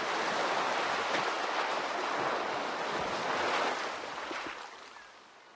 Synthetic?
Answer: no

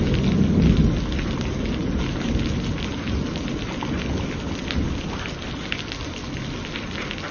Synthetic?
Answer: no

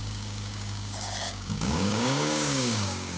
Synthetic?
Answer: yes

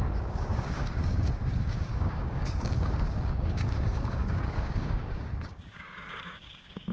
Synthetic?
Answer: yes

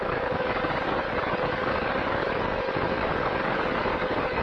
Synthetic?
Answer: yes